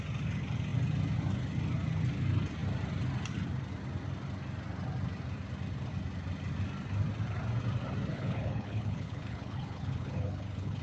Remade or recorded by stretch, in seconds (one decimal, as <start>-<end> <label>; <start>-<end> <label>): 0.0-8.1 recorded; 8.1-10.8 remade